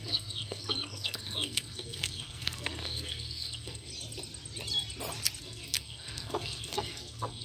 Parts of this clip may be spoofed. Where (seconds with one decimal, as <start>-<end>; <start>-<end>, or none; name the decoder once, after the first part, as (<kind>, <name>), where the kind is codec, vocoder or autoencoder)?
0.0-3.9 (codec, SNAC); 5.4-7.4